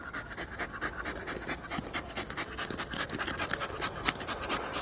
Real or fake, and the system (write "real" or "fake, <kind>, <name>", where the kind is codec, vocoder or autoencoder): real